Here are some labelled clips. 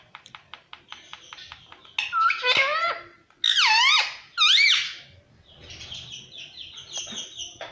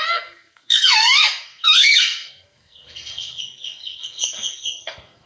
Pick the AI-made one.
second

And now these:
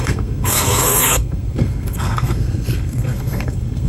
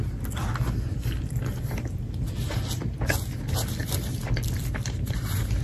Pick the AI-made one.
first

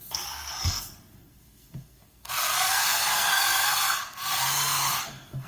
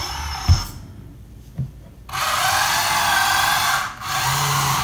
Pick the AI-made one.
first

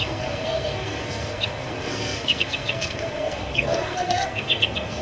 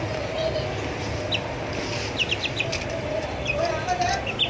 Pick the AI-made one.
first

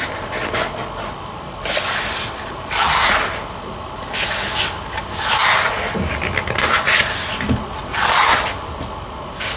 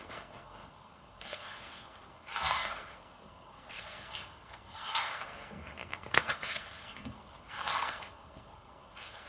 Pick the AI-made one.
second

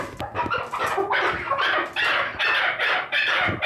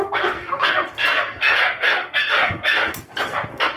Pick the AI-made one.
second